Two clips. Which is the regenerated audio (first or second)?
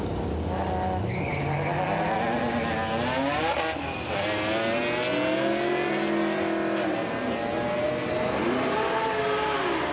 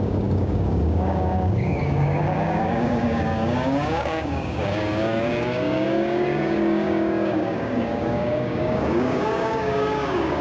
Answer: second